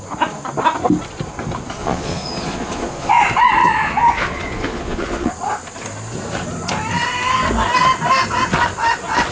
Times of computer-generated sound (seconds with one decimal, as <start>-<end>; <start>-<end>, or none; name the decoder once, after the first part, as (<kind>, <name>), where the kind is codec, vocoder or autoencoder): 1.8-3.1 (vocoder, Vocos); 3.6-5.3